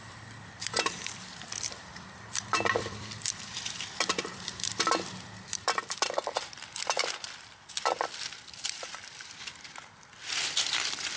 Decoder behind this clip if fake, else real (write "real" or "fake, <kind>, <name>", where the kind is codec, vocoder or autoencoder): fake, vocoder, BigVGAN v2